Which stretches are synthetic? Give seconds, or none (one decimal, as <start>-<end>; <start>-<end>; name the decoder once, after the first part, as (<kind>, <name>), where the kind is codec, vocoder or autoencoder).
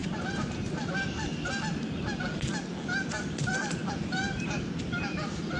0.0-0.9 (vocoder, BigVGAN v2); 3.8-4.8